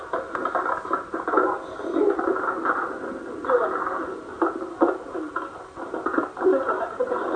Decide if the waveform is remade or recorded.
recorded